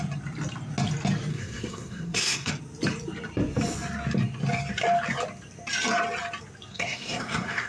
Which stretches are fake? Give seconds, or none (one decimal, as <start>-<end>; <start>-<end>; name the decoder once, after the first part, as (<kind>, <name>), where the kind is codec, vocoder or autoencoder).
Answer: 1.3-2.5 (codec, SNAC); 6.7-7.7